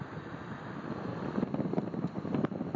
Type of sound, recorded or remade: recorded